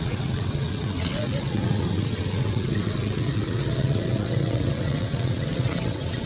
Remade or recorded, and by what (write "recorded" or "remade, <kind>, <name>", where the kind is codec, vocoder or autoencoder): remade, vocoder, WaveNeXt